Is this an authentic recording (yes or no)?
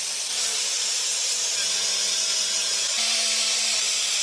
no